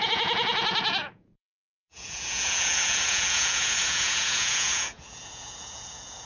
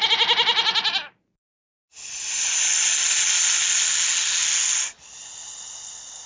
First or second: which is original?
second